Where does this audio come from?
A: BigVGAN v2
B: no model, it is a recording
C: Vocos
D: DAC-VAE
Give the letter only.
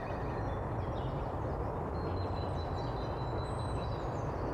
B